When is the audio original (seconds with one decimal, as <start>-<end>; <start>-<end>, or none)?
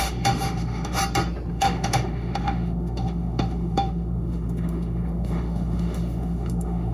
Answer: 1.0-1.5